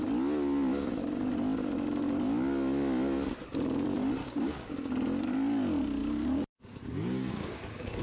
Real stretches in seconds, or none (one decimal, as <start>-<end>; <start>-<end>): 0.0-4.2; 4.9-6.0